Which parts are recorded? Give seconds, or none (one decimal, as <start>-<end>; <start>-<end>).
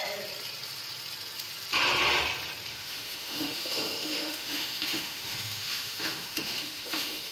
0.0-2.7